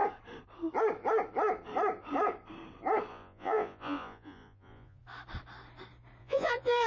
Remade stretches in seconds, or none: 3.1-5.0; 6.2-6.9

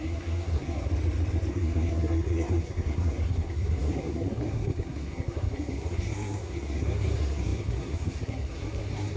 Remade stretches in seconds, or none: 0.0-0.9; 1.5-9.2

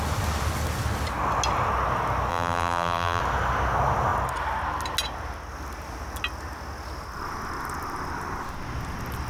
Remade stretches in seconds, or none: 2.3-3.2

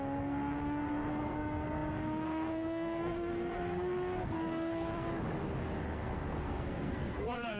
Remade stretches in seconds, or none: 0.0-5.1; 5.8-7.6

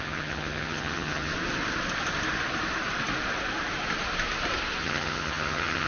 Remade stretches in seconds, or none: 0.0-1.3; 4.8-5.9